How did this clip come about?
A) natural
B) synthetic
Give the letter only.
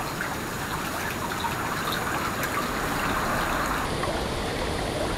A